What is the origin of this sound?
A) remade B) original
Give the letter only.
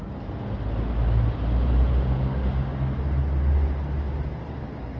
B